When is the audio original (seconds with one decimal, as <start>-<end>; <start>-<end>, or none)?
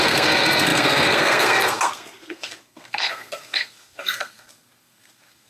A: none